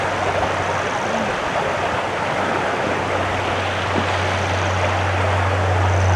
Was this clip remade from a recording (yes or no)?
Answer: no